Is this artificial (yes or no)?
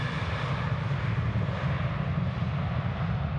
no